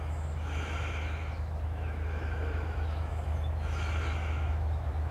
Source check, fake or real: fake